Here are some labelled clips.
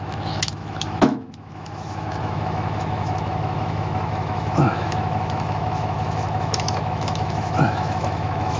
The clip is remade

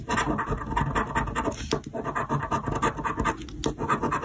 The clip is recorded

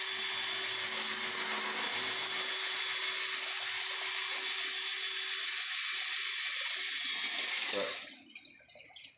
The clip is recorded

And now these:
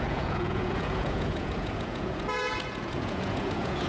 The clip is remade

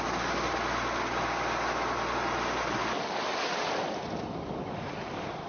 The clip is recorded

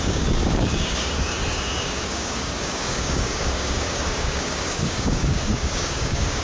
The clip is remade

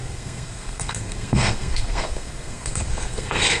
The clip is remade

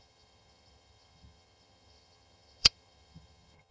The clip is remade